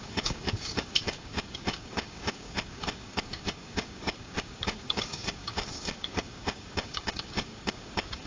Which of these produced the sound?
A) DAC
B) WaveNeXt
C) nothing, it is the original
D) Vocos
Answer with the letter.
A